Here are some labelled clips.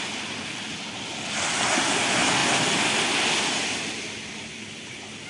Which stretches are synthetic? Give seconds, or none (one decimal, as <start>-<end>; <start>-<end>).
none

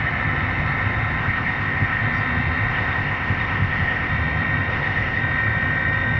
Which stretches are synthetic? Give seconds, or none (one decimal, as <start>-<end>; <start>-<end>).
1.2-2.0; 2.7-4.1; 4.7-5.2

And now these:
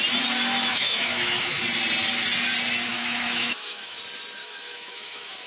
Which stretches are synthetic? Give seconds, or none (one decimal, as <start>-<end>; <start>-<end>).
0.7-1.6; 2.9-4.0; 4.4-5.5